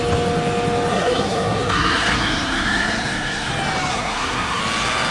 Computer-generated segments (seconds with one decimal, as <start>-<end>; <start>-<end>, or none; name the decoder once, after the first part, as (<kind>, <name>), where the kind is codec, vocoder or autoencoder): 0.9-3.5 (codec, SNAC); 3.9-4.6